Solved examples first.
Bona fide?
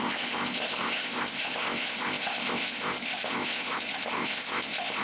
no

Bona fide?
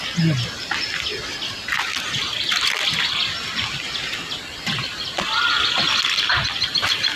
yes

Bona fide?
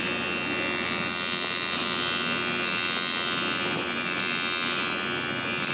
yes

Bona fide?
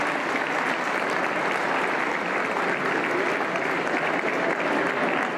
yes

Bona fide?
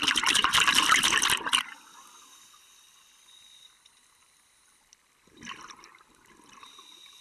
yes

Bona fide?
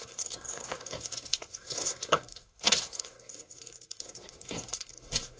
no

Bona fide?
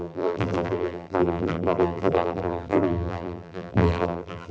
no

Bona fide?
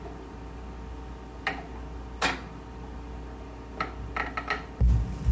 yes